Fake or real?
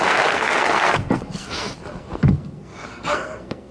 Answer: fake